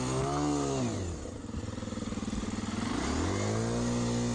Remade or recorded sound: recorded